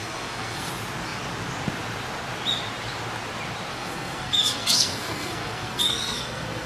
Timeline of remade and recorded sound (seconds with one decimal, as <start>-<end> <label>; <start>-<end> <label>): 0.0-0.7 remade; 0.7-3.7 recorded; 3.7-6.7 remade